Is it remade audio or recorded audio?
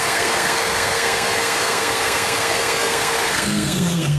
remade